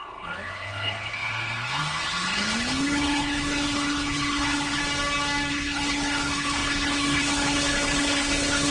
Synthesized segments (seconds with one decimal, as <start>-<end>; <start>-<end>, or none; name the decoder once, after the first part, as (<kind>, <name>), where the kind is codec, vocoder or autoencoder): 0.0-4.8 (codec, HILCodec); 5.5-8.7